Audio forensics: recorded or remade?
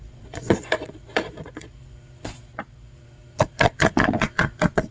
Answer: remade